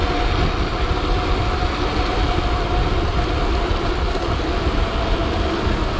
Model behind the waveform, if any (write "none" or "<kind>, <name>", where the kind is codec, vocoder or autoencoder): none